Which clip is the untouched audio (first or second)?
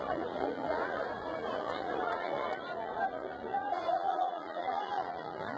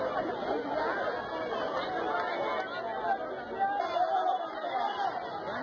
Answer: second